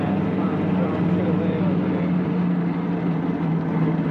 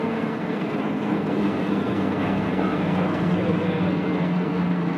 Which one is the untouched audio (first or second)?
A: first